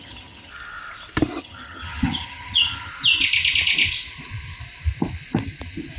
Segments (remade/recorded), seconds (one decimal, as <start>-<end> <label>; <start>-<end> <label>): 0.0-0.5 remade; 0.5-1.4 recorded; 1.4-2.9 remade; 2.9-6.0 recorded